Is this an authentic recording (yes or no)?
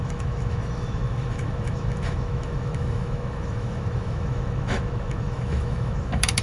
no